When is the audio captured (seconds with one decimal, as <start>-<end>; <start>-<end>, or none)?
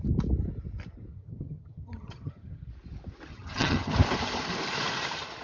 0.0-1.1; 2.7-3.3; 3.9-5.4